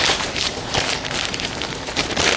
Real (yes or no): no